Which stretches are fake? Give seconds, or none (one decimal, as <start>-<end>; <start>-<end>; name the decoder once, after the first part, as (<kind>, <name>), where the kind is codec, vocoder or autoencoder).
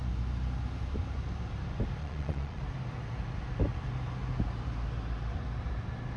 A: 2.0-2.6 (vocoder, Vocos)